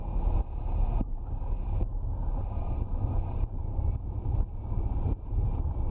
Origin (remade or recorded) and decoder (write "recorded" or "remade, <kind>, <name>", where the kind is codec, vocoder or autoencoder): remade, vocoder, BigVGAN v2